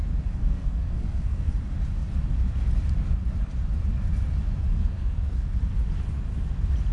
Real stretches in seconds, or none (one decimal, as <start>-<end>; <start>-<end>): 0.0-0.4; 1.5-4.7; 5.6-6.9